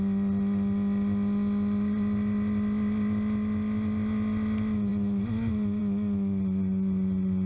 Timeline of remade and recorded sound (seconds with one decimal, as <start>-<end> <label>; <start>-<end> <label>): 0.0-7.5 recorded